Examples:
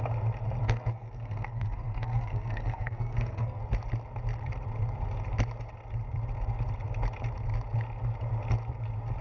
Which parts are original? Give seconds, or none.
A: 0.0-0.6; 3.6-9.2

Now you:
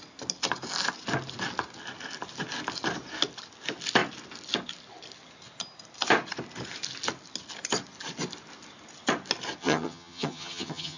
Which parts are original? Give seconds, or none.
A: 0.0-9.6

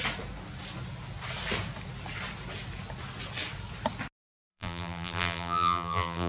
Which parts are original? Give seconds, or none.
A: 0.0-4.5

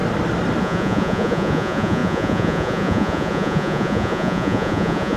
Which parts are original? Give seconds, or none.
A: 0.0-0.6

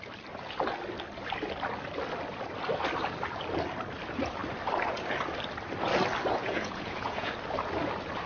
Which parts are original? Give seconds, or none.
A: 0.0-6.4; 7.3-8.3

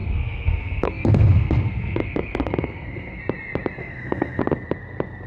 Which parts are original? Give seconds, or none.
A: 3.2-3.8; 4.4-5.3

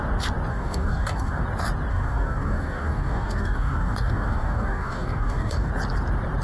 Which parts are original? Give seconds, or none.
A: 0.0-0.5; 1.4-1.9; 5.7-6.4